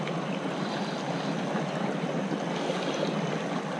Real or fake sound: real